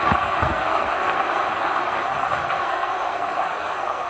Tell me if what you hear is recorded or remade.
remade